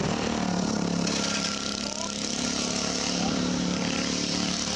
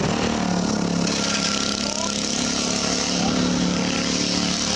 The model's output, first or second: first